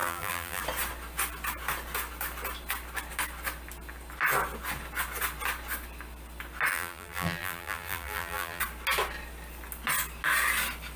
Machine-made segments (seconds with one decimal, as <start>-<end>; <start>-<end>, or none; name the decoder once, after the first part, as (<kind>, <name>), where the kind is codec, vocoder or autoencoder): 0.0-0.6 (vocoder, BigVGAN v2); 6.7-8.6